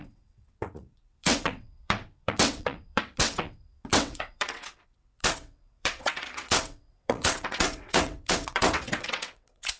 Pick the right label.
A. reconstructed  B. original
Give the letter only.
A